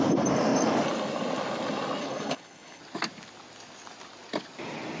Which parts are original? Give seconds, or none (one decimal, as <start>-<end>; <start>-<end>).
0.0-2.0; 2.8-5.0